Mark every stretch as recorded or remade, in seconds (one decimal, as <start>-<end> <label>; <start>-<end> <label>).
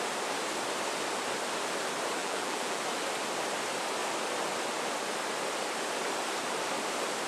0.0-2.2 recorded; 2.2-2.8 remade; 2.8-7.3 recorded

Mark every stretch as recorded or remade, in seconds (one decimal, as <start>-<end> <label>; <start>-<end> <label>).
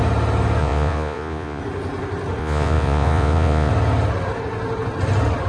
0.0-0.6 recorded; 0.6-1.6 remade; 1.6-2.4 recorded; 2.4-3.7 remade; 3.7-5.5 recorded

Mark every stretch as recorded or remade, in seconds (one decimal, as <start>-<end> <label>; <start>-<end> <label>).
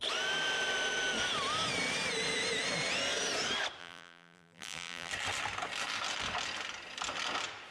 0.0-3.8 recorded; 3.8-5.1 remade; 5.1-7.7 recorded